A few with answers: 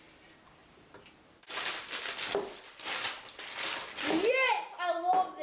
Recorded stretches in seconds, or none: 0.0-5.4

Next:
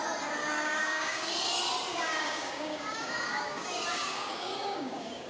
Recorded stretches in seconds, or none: 0.0-0.4; 1.3-1.9

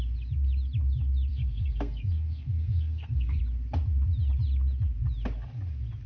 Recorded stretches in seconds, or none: 0.0-1.3; 3.4-6.1

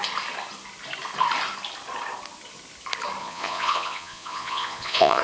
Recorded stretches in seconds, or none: 0.0-3.2

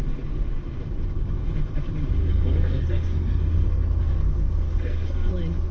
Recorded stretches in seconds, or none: 0.0-2.2; 5.3-5.7

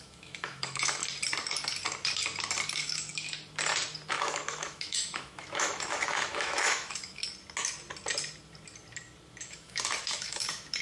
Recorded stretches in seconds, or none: 1.0-2.7; 3.1-4.1; 7.2-9.4

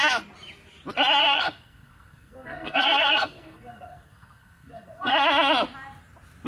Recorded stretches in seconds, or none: 0.0-1.2; 5.1-6.5

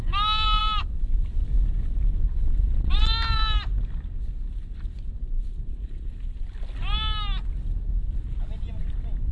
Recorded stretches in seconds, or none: 0.0-9.3